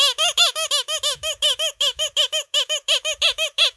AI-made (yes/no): yes